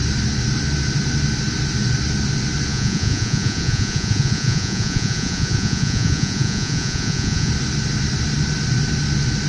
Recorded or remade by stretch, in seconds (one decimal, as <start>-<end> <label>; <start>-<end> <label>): 0.0-2.7 recorded; 2.7-7.5 remade; 7.5-9.5 recorded